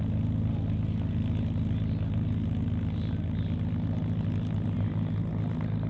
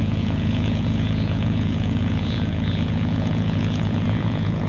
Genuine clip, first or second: first